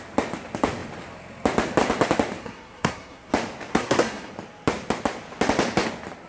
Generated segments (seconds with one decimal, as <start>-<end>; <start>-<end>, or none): 2.4-3.3; 3.7-4.3